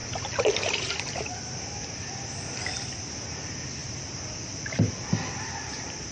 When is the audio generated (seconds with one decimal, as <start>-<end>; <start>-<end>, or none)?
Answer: none